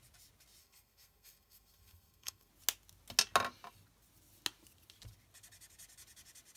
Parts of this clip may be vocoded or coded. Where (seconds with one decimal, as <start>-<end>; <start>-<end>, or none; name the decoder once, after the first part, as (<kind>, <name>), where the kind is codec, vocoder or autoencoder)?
0.6-2.5 (codec, SNAC)